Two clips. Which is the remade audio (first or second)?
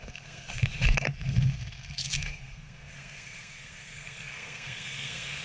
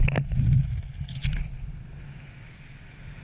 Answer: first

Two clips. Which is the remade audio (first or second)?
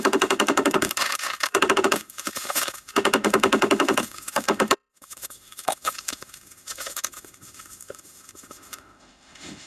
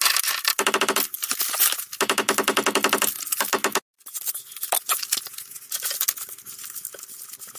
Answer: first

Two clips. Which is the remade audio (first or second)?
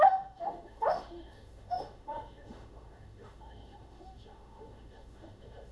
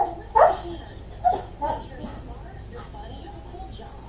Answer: first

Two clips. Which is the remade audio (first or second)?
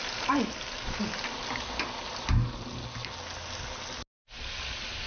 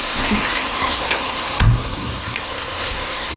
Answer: second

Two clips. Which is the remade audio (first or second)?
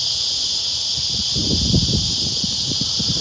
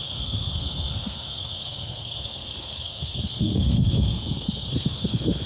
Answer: second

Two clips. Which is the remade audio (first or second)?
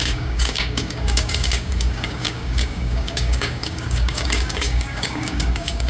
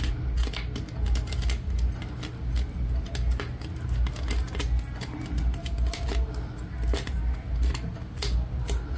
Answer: first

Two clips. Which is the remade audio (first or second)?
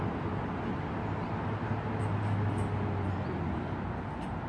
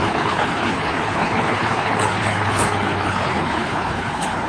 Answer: second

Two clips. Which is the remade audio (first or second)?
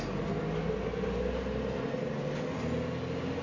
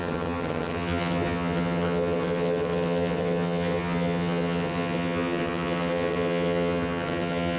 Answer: second